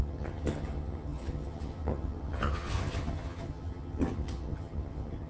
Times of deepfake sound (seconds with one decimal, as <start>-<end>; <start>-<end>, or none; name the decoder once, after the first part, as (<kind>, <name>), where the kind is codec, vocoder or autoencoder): 0.0-5.3 (vocoder, HiFi-GAN)